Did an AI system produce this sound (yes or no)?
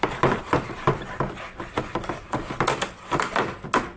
no